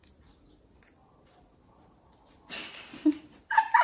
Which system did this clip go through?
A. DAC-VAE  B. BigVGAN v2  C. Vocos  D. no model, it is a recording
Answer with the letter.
D